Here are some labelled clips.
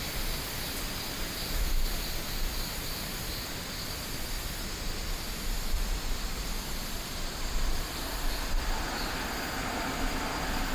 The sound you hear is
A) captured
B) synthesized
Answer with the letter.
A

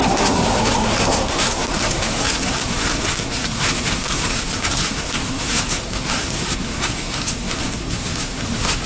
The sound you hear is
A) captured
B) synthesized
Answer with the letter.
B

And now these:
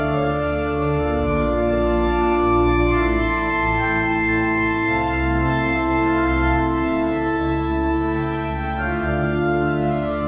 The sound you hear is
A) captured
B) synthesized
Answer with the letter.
B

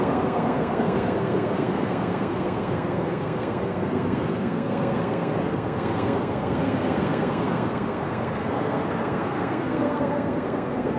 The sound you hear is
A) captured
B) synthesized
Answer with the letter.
B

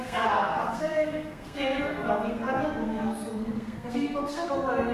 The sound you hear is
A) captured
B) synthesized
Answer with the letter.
B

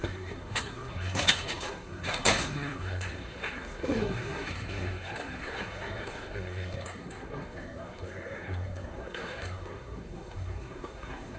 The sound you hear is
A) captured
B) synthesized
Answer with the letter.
B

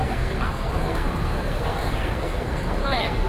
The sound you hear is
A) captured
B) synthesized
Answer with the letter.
B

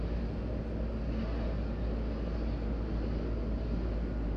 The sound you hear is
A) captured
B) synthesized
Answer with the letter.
A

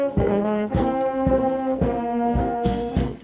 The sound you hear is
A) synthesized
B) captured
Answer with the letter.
A